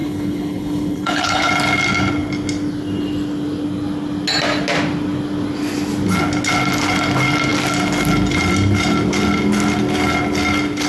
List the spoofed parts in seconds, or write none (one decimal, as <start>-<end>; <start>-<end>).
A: 0.0-1.5